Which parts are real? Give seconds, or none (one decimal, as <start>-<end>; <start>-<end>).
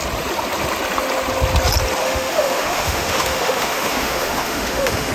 0.0-2.0